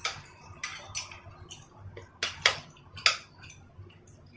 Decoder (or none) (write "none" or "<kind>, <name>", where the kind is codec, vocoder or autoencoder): none